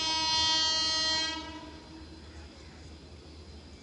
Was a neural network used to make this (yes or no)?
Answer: no